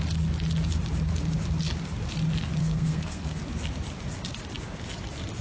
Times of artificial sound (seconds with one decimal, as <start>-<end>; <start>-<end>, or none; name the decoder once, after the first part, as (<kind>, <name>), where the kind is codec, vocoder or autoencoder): 2.6-3.4 (codec, SNAC)

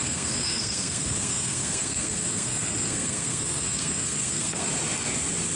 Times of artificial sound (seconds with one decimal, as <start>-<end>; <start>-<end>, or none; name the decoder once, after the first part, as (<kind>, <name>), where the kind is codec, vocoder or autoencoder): 0.0-4.7 (codec, SNAC)

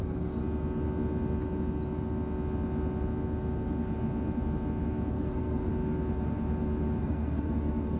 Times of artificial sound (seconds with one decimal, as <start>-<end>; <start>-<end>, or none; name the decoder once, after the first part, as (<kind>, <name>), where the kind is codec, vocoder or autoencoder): 0.0-0.4 (codec, SNAC); 5.1-5.7; 7.0-8.0

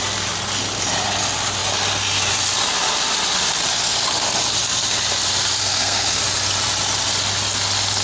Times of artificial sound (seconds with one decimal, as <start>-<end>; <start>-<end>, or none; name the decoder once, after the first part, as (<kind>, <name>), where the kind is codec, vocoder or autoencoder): 5.6-6.2 (codec, SNAC)

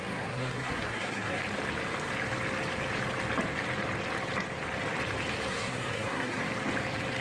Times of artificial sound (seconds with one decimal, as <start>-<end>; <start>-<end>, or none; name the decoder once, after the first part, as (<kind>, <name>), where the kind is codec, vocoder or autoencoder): 0.0-1.4 (codec, SNAC); 5.5-6.5

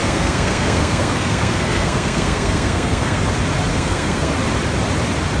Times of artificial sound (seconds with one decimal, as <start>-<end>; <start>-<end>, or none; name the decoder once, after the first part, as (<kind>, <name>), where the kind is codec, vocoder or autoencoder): 0.0-3.2 (codec, SNAC); 3.7-4.3